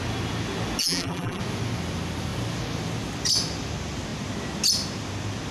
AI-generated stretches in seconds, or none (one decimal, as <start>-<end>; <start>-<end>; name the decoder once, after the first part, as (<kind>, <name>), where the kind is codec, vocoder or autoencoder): 0.8-1.4 (vocoder, BigVGAN v2)

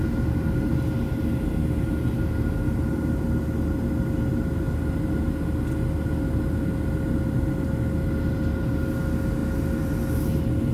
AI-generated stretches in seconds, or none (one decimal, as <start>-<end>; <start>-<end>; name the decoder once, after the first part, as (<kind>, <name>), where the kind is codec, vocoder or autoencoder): none

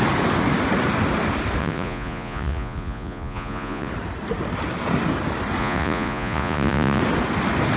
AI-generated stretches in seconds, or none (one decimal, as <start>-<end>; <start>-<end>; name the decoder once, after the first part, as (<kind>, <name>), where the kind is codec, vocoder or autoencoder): 1.6-3.9 (vocoder, Vocos); 5.6-7.0

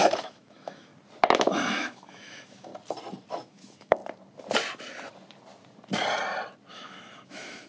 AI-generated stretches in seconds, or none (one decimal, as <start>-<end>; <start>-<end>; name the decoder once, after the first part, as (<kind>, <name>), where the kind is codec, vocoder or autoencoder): 0.0-0.9 (autoencoder, DAC-VAE); 1.5-2.7; 3.3-4.0; 6.7-7.7